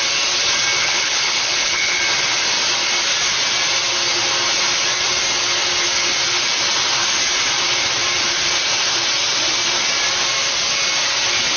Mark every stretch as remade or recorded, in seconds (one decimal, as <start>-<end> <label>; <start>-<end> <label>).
0.0-0.8 recorded; 0.8-2.0 remade; 2.0-11.6 recorded